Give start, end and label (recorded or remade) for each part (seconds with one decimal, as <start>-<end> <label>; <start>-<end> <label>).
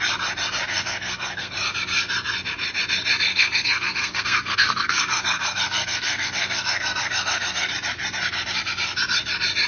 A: 0.0-0.7 recorded; 0.7-1.5 remade; 1.5-3.3 recorded; 3.3-7.7 remade; 7.7-9.7 recorded